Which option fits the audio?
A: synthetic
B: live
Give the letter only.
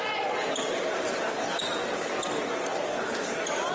B